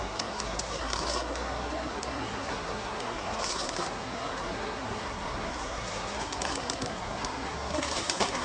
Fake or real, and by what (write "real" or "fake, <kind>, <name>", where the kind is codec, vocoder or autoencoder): fake, codec, SNAC